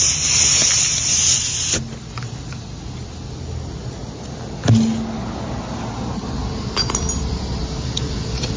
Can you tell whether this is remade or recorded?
recorded